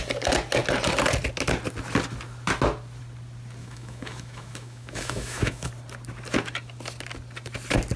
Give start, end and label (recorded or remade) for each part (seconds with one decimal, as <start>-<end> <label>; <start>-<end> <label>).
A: 0.0-3.6 recorded; 3.6-5.7 remade; 5.7-8.0 recorded